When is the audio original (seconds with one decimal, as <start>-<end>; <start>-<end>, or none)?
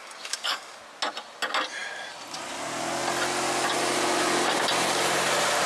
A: 0.8-5.7